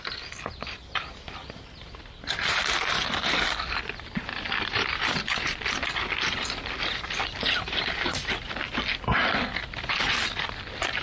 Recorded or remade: recorded